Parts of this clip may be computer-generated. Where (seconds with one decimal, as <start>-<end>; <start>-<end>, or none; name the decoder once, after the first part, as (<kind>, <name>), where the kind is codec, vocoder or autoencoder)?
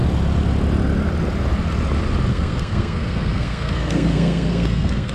2.3-5.1 (codec, SNAC)